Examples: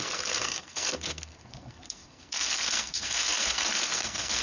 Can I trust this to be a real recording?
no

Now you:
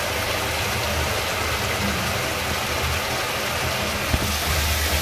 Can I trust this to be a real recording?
yes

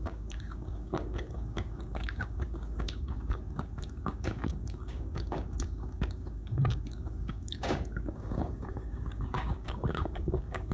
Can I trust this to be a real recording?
no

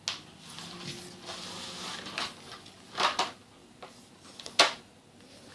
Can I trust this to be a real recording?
yes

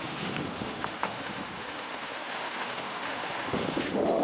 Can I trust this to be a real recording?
no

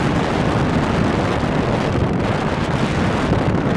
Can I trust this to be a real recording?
yes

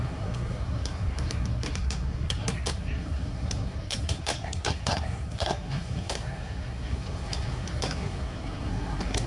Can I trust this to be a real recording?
no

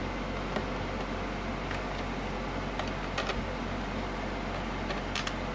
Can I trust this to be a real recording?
yes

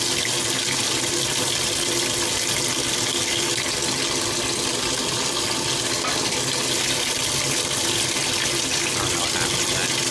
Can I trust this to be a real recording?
yes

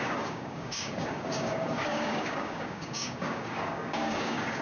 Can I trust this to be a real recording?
no